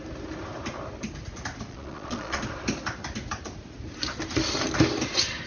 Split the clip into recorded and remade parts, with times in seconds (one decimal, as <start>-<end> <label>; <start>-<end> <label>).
0.0-1.7 recorded; 1.7-2.4 remade; 2.4-5.5 recorded